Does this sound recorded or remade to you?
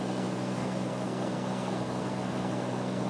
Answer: remade